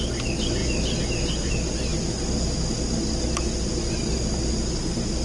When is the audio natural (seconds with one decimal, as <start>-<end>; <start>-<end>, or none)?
0.0-5.2